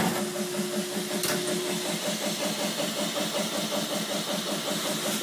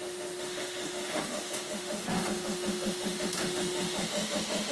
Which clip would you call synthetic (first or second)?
second